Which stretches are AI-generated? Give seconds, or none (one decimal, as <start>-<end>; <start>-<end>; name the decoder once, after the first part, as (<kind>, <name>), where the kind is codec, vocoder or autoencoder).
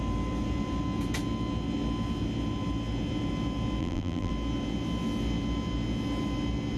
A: 3.8-4.3 (vocoder, BigVGAN v2)